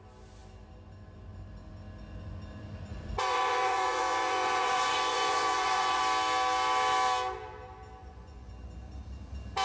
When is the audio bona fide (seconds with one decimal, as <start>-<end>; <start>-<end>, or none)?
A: 0.0-2.9; 6.0-8.0; 8.5-9.6